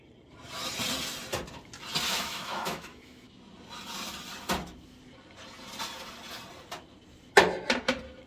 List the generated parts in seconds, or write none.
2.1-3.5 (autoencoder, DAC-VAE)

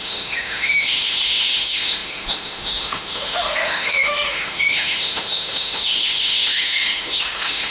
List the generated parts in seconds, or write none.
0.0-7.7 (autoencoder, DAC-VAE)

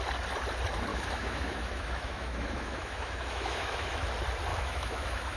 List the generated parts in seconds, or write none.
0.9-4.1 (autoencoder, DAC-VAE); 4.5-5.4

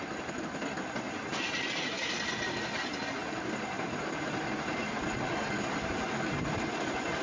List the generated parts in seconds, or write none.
none

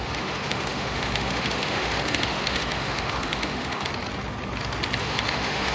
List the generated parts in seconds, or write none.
0.0-3.9 (autoencoder, DAC-VAE); 5.0-5.7

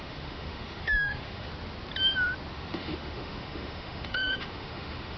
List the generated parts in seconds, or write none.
0.0-1.5 (autoencoder, DAC-VAE); 2.5-5.2